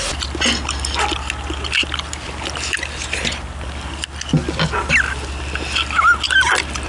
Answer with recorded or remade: recorded